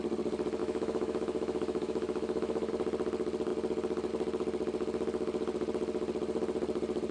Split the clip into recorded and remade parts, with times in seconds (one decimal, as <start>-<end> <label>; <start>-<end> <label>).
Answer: 0.0-0.6 recorded; 0.6-2.7 remade; 2.7-7.1 recorded